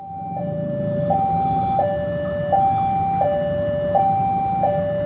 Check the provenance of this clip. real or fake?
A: real